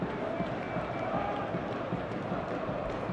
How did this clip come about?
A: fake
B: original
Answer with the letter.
B